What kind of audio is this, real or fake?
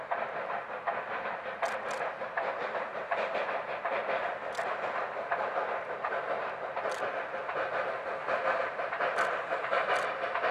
real